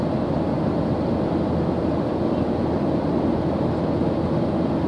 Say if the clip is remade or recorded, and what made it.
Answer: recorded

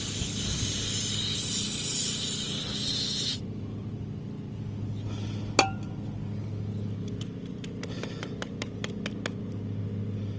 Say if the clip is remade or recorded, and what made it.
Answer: recorded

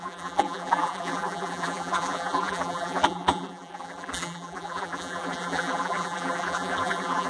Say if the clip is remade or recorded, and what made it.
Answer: remade, vocoder, BigVGAN v2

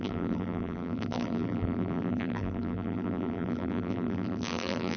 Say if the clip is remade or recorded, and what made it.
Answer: remade, vocoder, BigVGAN v2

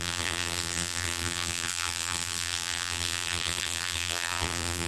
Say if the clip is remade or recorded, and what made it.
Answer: remade, vocoder, BigVGAN v2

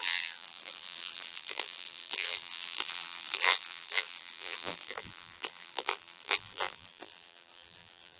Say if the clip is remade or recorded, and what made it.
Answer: remade, vocoder, BigVGAN v2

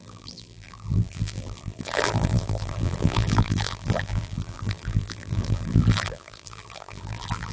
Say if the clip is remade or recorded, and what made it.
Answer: remade, vocoder, BigVGAN v2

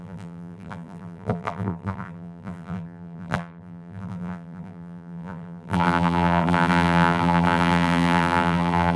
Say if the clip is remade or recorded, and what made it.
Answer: remade, vocoder, BigVGAN v2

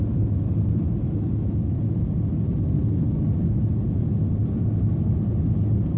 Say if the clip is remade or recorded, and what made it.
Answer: recorded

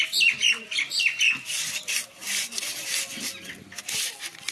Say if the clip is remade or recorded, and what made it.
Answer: recorded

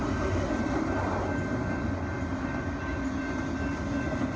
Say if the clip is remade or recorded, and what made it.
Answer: recorded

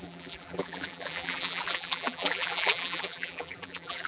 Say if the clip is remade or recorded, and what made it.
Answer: remade, vocoder, BigVGAN v2